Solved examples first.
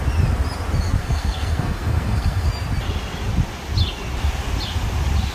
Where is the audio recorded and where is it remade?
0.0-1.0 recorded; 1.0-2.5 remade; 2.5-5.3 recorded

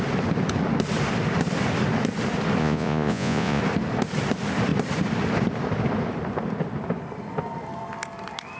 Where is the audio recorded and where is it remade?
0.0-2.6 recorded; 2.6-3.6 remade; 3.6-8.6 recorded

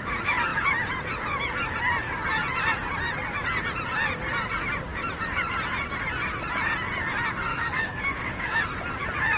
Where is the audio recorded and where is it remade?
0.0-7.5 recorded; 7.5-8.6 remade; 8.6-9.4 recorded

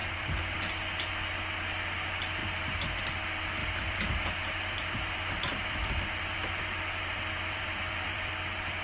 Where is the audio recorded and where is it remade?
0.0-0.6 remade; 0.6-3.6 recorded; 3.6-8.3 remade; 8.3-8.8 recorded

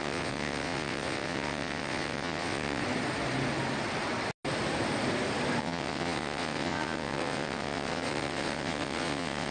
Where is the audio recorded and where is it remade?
0.0-2.8 remade; 2.8-5.6 recorded; 5.6-9.5 remade

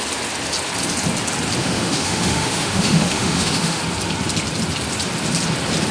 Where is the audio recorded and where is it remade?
0.0-1.6 recorded; 1.6-3.8 remade; 3.8-5.9 recorded

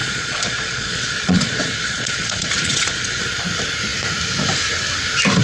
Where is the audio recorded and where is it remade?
0.0-3.2 remade; 3.2-5.4 recorded

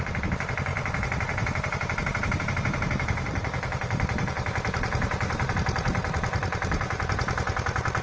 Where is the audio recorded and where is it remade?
0.0-8.0 remade